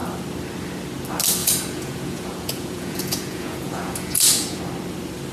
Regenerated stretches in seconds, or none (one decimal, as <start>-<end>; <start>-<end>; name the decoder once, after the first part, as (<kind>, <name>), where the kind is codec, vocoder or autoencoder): 1.4-4.6 (vocoder, Vocos)